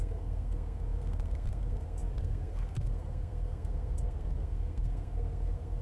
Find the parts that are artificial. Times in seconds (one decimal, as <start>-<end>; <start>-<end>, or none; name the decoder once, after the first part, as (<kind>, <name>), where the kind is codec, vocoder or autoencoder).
0.0-5.8 (codec, SNAC)